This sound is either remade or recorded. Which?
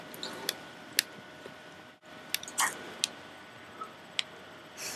recorded